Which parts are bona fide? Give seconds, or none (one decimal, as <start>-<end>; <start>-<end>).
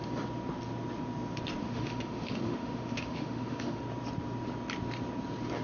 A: 0.0-1.6; 3.8-5.6